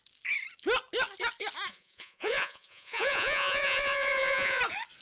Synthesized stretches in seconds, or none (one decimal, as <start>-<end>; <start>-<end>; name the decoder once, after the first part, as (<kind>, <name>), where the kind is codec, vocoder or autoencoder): 1.7-4.6 (vocoder, Vocos)